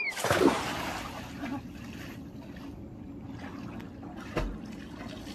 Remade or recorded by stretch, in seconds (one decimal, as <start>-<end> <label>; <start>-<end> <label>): 0.0-5.3 recorded